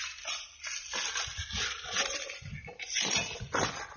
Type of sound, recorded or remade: recorded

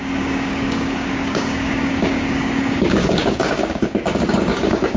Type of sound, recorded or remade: remade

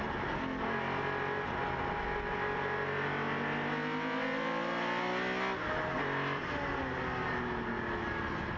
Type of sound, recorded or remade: recorded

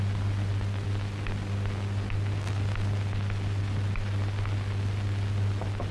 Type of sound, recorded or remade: recorded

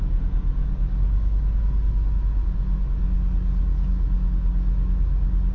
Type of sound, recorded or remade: recorded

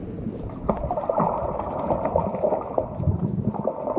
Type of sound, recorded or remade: recorded